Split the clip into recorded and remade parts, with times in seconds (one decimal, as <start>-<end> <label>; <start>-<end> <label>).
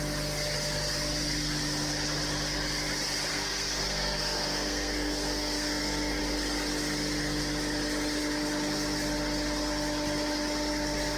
0.0-3.3 recorded; 3.3-6.2 remade; 6.2-11.2 recorded